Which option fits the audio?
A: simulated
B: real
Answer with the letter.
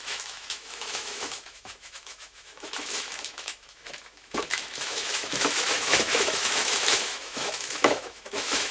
A